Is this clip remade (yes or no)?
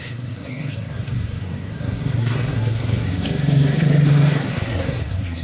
yes